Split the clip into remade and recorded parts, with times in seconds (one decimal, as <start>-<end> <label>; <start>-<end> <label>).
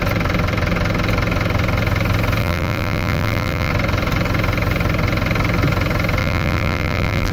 0.0-2.4 recorded; 2.4-3.7 remade; 3.7-6.2 recorded; 6.2-7.3 remade